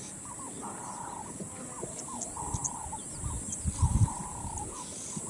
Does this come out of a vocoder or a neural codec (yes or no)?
no